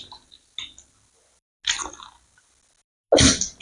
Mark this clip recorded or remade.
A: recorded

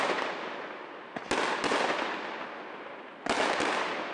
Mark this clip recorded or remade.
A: recorded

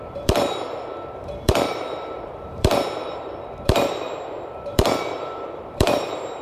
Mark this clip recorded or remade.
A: remade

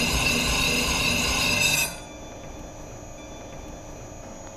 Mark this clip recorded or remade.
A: recorded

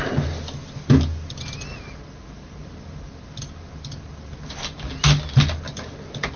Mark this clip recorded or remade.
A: recorded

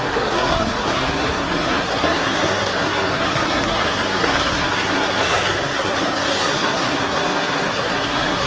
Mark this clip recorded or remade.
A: remade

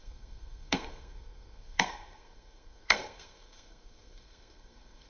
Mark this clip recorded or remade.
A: remade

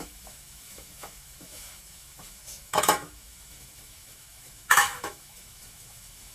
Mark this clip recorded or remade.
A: remade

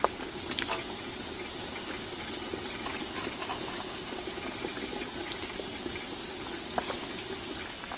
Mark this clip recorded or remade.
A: recorded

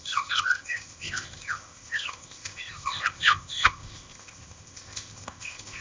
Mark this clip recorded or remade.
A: remade